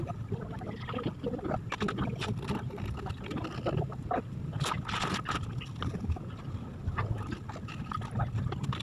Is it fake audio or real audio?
real